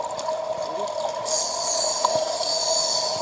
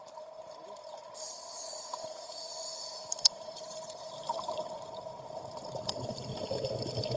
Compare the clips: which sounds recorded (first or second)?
first